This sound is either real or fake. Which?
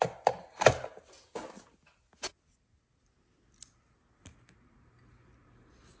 real